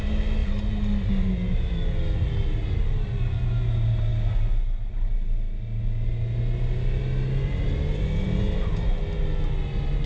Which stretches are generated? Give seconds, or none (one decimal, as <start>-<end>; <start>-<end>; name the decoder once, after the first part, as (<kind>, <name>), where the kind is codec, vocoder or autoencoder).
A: none